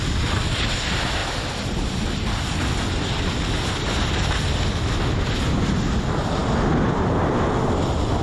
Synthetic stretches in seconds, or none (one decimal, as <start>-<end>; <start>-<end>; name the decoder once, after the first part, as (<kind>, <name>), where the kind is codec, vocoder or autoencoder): none